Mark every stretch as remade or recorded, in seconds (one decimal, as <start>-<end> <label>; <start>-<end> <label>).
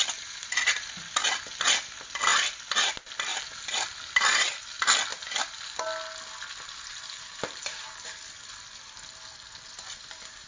0.0-3.3 recorded; 3.3-4.0 remade; 4.0-5.1 recorded; 5.1-5.8 remade; 5.8-6.9 recorded; 6.9-8.2 remade; 8.2-10.5 recorded